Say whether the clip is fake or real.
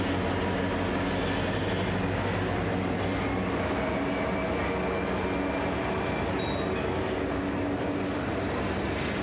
real